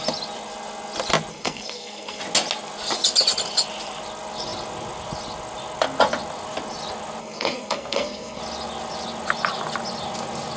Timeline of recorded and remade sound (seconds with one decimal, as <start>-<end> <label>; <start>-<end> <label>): 0.0-1.3 recorded; 1.3-2.2 remade; 2.2-7.2 recorded; 7.2-8.4 remade; 8.4-10.6 recorded